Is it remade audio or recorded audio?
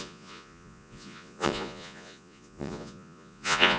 remade